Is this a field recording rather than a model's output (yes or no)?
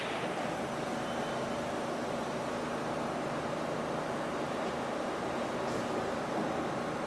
yes